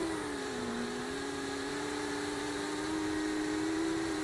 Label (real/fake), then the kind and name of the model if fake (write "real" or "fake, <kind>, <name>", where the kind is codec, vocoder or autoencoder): fake, vocoder, BigVGAN v2